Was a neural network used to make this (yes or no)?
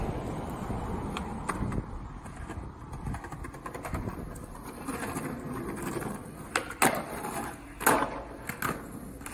no